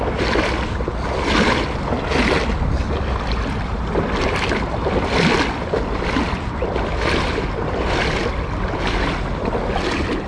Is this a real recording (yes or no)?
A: yes